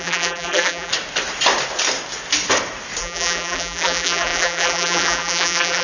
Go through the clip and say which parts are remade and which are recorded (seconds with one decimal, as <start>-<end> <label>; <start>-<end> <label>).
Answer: 0.0-0.9 remade; 0.9-3.0 recorded; 3.0-5.8 remade

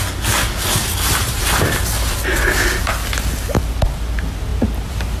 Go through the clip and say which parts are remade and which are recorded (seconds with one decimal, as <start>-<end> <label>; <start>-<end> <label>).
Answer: 0.0-0.8 recorded; 0.8-1.8 remade; 1.8-4.5 recorded; 4.5-5.2 remade

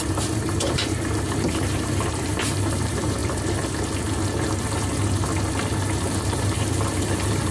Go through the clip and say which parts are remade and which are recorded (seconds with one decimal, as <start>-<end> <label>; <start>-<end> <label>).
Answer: 0.0-3.2 remade; 3.2-6.2 recorded; 6.2-7.5 remade

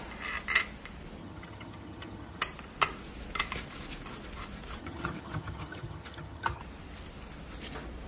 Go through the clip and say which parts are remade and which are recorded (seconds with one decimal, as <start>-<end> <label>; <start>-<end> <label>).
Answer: 0.0-1.2 recorded; 1.2-2.4 remade; 2.4-4.8 recorded; 4.8-6.6 remade; 6.6-8.1 recorded

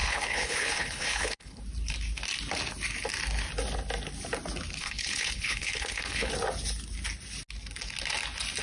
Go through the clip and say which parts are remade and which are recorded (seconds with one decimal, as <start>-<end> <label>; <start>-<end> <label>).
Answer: 0.0-1.6 remade; 1.6-4.8 recorded; 4.8-6.3 remade; 6.3-8.6 recorded

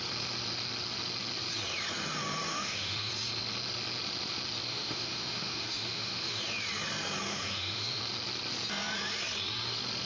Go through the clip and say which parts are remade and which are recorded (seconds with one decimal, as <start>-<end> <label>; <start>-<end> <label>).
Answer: 0.0-2.5 recorded; 2.5-3.1 remade; 3.1-4.7 recorded; 4.7-6.4 remade; 6.4-7.3 recorded; 7.3-8.0 remade; 8.0-10.1 recorded

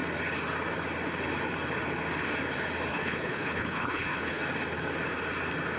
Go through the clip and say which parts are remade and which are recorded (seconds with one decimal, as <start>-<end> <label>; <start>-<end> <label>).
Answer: 0.0-2.9 recorded; 2.9-4.4 remade; 4.4-5.8 recorded